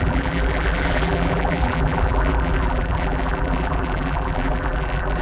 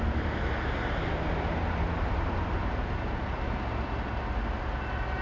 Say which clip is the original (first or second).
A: second